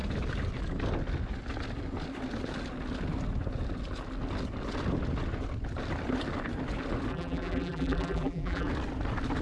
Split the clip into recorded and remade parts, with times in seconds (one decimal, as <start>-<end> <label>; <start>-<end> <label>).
0.0-7.1 recorded; 7.1-8.7 remade; 8.7-9.4 recorded